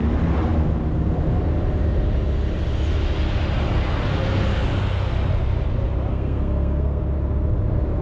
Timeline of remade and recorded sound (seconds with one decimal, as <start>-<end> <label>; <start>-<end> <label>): 0.0-6.1 recorded; 6.1-7.0 remade; 7.0-8.0 recorded